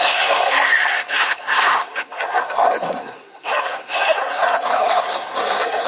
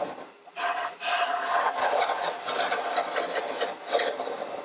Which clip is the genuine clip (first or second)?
second